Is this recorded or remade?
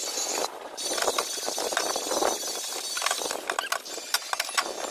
recorded